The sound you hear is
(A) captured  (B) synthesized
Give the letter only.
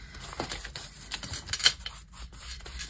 A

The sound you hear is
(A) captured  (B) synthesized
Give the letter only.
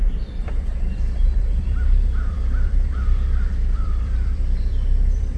B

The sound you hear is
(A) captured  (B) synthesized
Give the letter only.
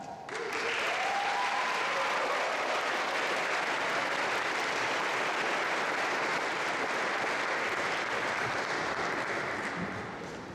A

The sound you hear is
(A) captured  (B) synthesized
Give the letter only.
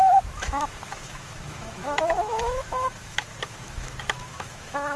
B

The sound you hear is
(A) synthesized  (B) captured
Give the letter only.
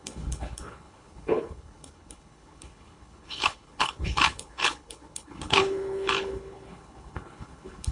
A